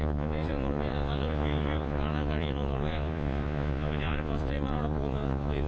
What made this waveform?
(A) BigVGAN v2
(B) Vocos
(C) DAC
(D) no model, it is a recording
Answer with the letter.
B